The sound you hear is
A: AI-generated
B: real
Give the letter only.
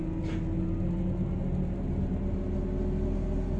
B